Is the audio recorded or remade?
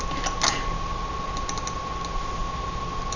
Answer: recorded